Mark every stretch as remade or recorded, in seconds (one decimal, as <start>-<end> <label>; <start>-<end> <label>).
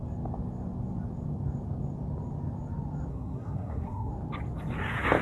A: 0.0-3.1 recorded; 3.1-4.1 remade; 4.1-5.2 recorded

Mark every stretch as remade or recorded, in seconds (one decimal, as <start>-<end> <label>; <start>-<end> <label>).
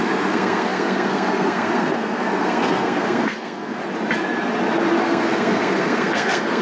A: 0.0-3.8 remade; 3.8-5.0 recorded; 5.0-6.6 remade